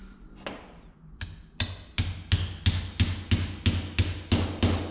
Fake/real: real